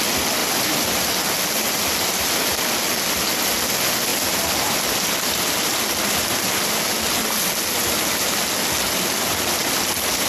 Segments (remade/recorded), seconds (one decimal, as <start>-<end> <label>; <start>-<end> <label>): 0.0-0.4 recorded; 0.4-1.0 remade; 1.0-10.3 recorded